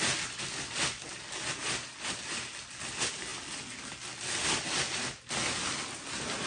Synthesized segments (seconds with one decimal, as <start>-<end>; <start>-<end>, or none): none

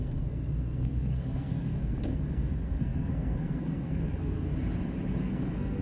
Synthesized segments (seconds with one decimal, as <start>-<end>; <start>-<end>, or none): 0.0-4.5; 5.2-5.8